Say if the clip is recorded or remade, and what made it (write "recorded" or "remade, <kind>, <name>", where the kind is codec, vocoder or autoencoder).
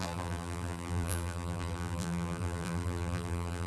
remade, vocoder, BigVGAN v2